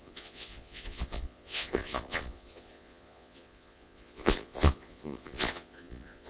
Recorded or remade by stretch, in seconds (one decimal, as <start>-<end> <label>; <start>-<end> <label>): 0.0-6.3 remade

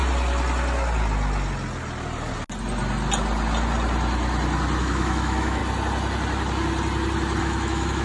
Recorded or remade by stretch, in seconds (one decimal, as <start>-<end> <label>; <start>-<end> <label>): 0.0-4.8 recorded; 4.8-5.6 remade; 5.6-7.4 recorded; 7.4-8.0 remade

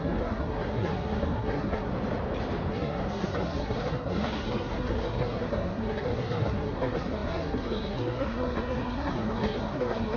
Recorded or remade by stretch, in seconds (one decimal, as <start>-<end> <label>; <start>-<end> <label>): 0.0-1.9 remade; 1.9-2.7 recorded; 2.7-10.2 remade

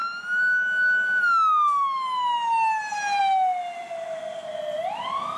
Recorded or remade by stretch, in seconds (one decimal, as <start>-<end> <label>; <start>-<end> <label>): 0.0-5.4 recorded

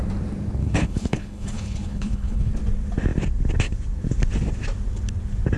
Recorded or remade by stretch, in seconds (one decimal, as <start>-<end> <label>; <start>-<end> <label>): 0.0-0.6 recorded; 0.6-2.5 remade; 2.5-5.6 recorded

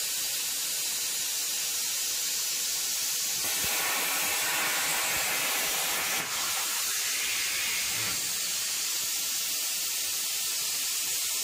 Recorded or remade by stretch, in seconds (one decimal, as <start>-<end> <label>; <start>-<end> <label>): 0.0-11.4 recorded

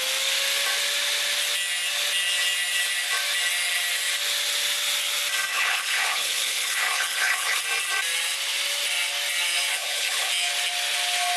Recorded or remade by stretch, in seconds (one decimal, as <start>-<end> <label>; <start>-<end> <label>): 0.0-5.5 recorded; 5.5-7.6 remade; 7.6-9.7 recorded; 9.7-10.3 remade; 10.3-11.4 recorded

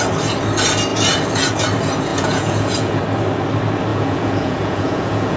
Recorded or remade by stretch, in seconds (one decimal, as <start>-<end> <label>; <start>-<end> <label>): 0.0-2.1 recorded; 2.1-3.0 remade; 3.0-3.9 recorded; 3.9-5.4 remade